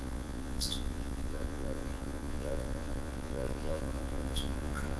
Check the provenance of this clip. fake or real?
fake